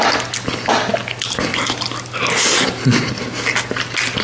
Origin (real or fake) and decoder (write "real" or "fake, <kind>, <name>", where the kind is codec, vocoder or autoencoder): real